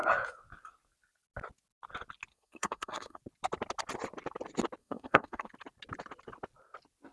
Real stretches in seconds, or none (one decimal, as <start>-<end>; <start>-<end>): 0.0-2.3; 3.2-4.8; 5.5-7.1